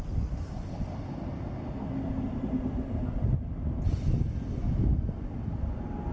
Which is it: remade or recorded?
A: recorded